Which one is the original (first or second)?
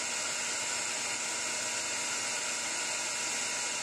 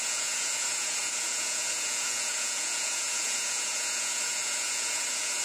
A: first